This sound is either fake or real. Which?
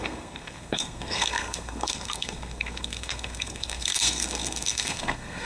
fake